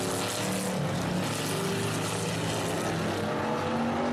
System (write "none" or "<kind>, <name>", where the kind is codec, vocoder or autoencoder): none